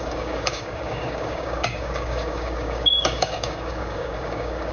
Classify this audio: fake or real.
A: fake